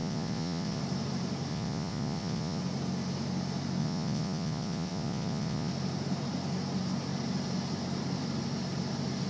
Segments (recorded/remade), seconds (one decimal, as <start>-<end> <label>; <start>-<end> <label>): 0.0-0.8 remade; 0.8-1.5 recorded; 1.5-2.6 remade; 2.6-3.8 recorded; 3.8-5.7 remade; 5.7-9.3 recorded